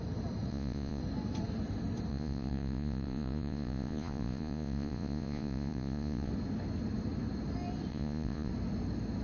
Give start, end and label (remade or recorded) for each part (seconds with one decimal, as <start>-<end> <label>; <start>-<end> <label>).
0.0-0.5 recorded; 0.5-1.0 remade; 1.0-2.1 recorded; 2.1-6.3 remade; 6.3-7.9 recorded; 7.9-8.5 remade; 8.5-9.2 recorded